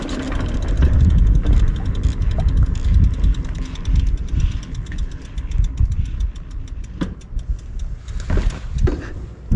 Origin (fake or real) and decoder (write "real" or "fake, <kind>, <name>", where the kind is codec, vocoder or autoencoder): real